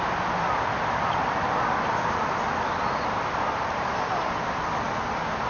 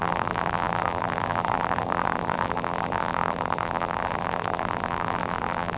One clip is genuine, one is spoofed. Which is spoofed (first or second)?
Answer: second